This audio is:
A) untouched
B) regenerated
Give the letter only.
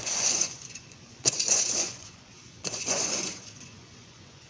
B